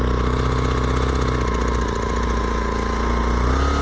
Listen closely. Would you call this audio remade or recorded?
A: recorded